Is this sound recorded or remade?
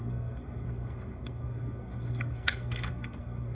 remade